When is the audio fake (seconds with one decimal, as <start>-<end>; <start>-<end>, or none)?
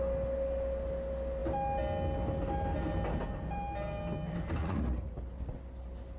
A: 4.6-5.2